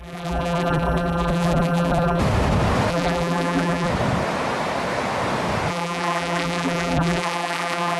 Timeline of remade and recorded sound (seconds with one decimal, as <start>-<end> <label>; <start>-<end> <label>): 0.0-2.2 remade; 2.2-2.9 recorded; 2.9-3.9 remade; 3.9-5.7 recorded; 5.7-8.0 remade

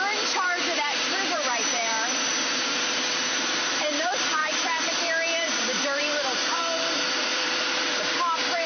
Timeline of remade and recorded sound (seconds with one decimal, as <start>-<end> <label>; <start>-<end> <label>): 0.0-8.7 remade

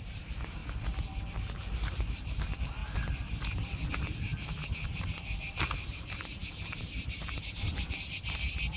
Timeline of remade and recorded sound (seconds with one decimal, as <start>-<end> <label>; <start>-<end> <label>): 0.0-0.6 remade; 0.6-1.3 recorded; 1.3-2.8 remade; 2.8-3.9 recorded; 3.9-4.3 remade; 4.3-5.8 recorded; 5.8-8.8 remade

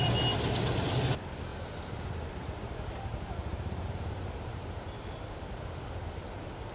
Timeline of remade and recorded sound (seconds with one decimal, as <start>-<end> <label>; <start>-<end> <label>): 0.0-1.5 recorded; 1.5-5.5 remade; 5.5-6.7 recorded

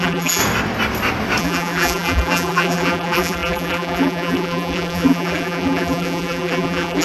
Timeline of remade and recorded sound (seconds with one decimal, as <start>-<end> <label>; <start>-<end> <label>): 0.0-0.4 remade; 0.4-1.4 recorded; 1.4-7.0 remade